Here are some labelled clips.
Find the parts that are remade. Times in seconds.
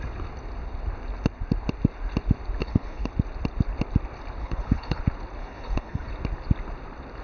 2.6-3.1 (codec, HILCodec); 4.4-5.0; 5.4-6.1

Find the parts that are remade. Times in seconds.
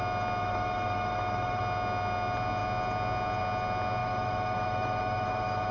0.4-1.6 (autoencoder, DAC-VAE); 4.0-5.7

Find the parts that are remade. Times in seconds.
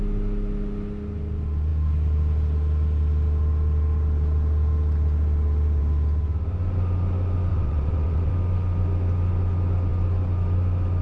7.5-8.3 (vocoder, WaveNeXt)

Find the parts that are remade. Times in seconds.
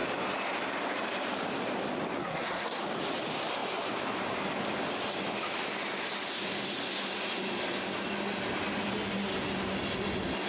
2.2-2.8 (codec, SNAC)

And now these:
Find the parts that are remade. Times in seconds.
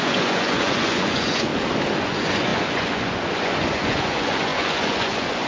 0.0-1.5 (vocoder, Vocos); 2.0-5.5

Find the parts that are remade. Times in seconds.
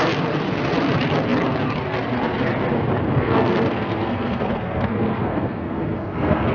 3.0-6.5 (codec, SNAC)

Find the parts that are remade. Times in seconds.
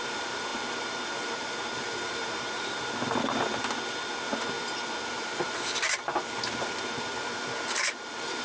0.0-3.5 (vocoder, BigVGAN v2); 5.1-8.4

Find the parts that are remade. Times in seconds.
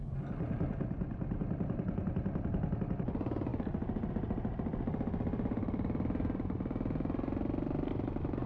none